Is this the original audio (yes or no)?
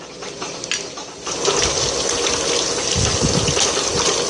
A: yes